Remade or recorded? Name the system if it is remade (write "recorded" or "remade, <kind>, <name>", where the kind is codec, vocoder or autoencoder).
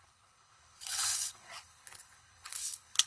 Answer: remade, codec, HILCodec